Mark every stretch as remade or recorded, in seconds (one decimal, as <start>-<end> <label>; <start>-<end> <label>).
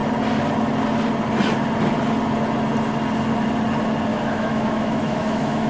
0.0-4.1 recorded; 4.1-5.7 remade